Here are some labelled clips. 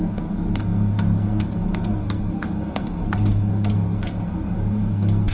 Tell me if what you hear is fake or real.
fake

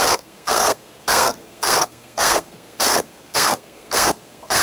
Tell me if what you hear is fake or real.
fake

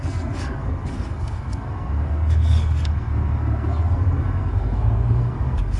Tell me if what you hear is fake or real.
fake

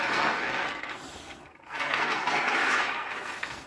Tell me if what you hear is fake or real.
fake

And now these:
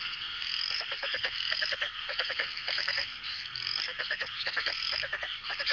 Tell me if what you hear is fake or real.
fake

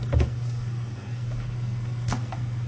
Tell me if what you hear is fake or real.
fake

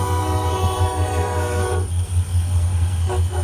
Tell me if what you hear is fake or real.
fake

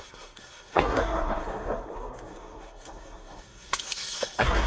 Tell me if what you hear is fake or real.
fake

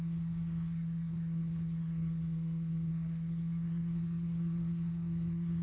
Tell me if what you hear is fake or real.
fake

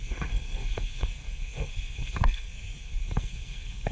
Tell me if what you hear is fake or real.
fake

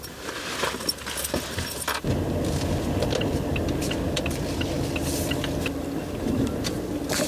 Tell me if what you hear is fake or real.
real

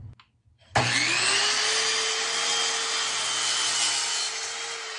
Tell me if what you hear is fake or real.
real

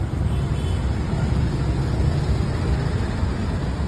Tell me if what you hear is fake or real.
real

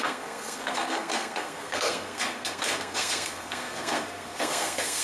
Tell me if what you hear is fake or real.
fake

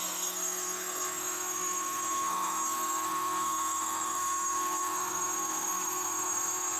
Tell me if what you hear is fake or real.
fake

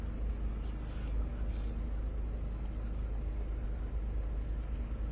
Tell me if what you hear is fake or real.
real